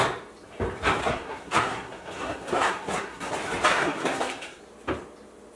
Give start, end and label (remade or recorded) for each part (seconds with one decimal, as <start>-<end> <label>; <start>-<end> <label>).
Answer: 0.0-1.0 recorded; 1.0-3.3 remade; 3.3-3.7 recorded; 3.7-4.6 remade; 4.6-5.6 recorded